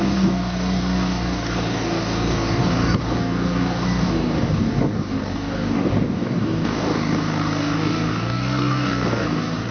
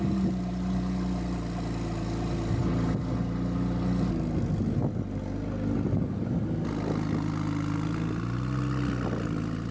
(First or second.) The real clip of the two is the second